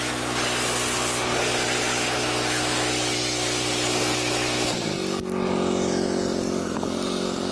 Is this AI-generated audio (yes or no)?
no